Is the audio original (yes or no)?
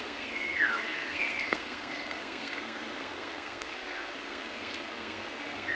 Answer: no